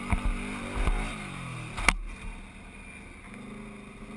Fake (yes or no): no